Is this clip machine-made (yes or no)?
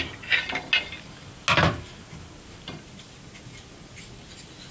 no